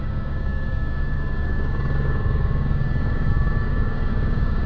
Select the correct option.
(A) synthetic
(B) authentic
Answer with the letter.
A